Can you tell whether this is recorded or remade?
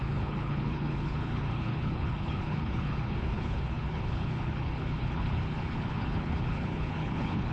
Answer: remade